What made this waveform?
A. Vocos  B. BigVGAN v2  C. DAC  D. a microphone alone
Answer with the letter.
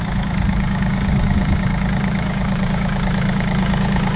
C